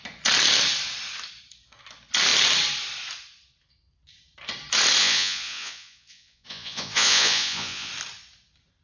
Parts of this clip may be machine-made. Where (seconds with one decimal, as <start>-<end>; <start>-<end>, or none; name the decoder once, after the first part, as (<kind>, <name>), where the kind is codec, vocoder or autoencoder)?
5.0-7.9 (vocoder, Vocos)